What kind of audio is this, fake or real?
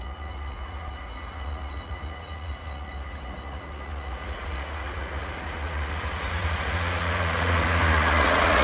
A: fake